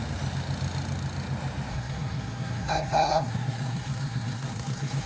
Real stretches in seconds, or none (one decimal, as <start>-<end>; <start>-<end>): 0.0-1.7

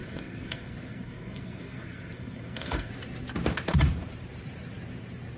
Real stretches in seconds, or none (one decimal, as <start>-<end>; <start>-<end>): 2.9-5.4

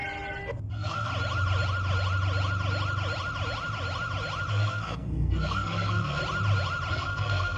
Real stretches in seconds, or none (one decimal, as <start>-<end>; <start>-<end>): 0.0-0.7; 1.1-4.5; 6.2-6.9

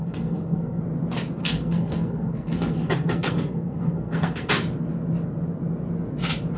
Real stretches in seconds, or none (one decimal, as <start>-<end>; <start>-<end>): 0.8-1.4; 4.5-6.6